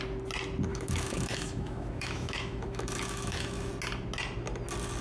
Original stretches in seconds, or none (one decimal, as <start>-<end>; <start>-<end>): 0.0-0.7; 3.7-5.0